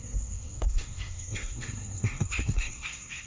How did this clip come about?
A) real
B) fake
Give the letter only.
B